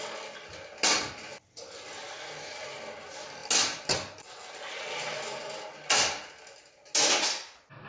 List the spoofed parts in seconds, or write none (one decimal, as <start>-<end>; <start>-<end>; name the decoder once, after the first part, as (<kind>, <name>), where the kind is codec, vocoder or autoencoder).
none